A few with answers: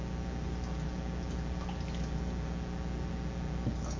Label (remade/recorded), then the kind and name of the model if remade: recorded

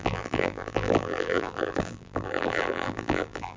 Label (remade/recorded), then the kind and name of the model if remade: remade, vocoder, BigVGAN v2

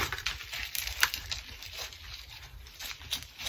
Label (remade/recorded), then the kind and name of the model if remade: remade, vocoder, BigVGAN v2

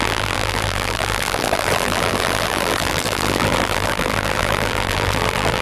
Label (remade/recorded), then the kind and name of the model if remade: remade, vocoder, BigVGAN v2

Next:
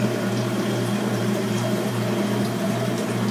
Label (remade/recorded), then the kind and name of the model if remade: remade, vocoder, BigVGAN v2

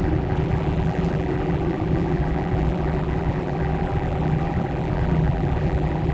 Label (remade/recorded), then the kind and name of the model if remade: remade, vocoder, BigVGAN v2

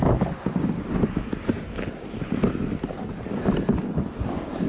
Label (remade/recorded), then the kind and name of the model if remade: recorded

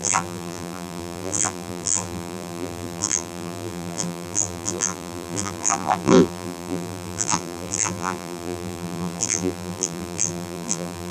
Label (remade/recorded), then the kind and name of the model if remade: remade, vocoder, BigVGAN v2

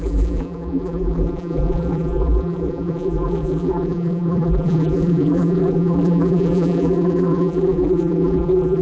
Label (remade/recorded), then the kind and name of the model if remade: remade, vocoder, BigVGAN v2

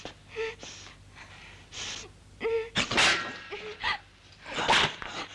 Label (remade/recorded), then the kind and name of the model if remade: recorded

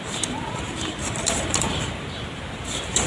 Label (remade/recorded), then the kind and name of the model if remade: remade, vocoder, BigVGAN v2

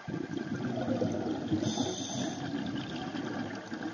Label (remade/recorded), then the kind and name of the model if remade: recorded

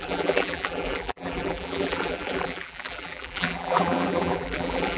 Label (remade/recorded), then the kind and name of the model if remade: remade, vocoder, BigVGAN v2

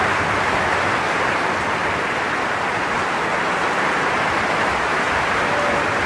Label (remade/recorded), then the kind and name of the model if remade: recorded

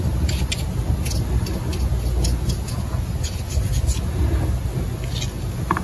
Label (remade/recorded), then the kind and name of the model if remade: recorded